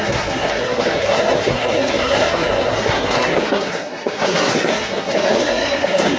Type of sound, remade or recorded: remade